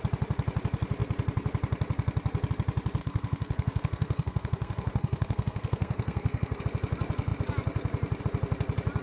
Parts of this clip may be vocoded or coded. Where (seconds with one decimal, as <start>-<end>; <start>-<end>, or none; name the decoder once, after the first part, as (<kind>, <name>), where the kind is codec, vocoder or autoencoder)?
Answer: 3.0-6.6 (codec, SNAC)

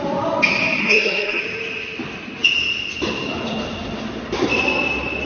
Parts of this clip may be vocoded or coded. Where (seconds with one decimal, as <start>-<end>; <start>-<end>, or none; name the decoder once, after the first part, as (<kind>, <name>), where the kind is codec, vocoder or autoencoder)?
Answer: 0.8-1.4 (codec, SNAC)

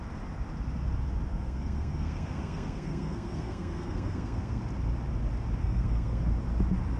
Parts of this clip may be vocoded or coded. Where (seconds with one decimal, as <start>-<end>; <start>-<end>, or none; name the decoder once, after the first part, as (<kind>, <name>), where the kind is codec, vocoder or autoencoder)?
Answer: 1.3-4.6 (codec, SNAC); 5.6-6.2

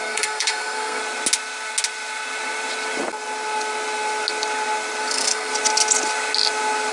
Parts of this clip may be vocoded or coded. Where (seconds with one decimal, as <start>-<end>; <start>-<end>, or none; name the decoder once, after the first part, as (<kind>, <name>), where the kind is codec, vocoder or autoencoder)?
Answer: 0.0-1.0 (codec, SNAC); 5.1-5.5

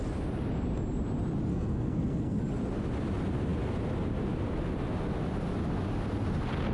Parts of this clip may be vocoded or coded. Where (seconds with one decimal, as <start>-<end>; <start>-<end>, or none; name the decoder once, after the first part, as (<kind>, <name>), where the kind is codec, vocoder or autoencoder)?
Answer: 1.5-2.4 (codec, SNAC)

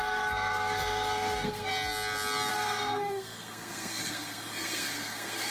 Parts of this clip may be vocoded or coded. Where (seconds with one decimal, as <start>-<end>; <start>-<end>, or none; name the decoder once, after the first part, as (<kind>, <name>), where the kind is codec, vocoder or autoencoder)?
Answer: 0.0-1.7 (codec, SNAC); 2.5-5.5

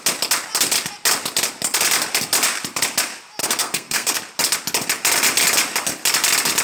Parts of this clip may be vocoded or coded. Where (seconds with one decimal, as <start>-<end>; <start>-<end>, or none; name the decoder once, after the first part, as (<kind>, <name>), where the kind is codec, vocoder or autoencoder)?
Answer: 3.4-4.2 (codec, SNAC)

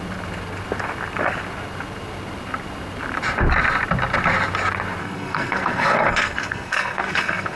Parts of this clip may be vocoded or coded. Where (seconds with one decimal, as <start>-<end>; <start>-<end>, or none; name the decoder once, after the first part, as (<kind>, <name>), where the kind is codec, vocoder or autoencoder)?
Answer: 5.0-7.6 (codec, SNAC)